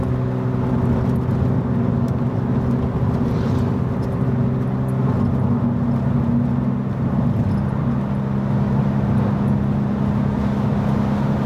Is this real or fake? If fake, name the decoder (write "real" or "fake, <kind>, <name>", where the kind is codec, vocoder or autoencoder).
real